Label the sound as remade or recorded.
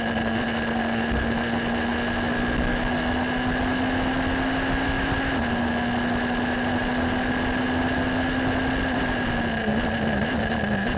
recorded